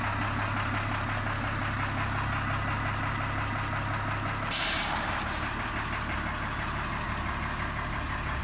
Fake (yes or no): no